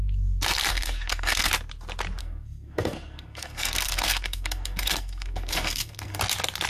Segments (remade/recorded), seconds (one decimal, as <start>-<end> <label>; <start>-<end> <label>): 0.0-0.7 recorded; 0.7-1.5 remade; 1.5-2.2 recorded; 2.2-6.2 remade; 6.2-6.7 recorded